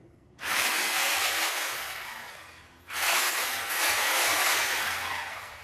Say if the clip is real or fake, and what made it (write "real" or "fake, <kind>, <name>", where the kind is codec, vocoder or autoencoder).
fake, codec, SNAC